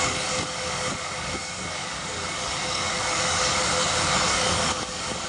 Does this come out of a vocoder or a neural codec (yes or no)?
yes